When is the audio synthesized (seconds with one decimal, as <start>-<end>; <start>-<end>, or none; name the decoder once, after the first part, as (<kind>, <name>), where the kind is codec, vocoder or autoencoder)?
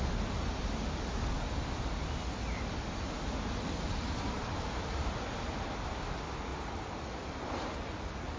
none